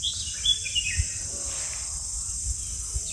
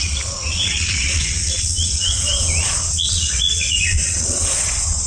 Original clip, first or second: first